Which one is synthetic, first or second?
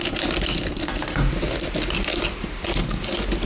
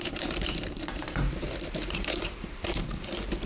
second